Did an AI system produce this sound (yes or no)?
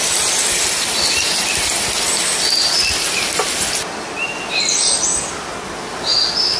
no